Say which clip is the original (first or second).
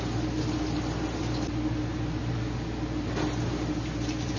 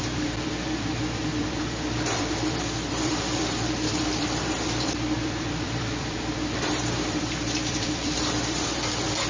first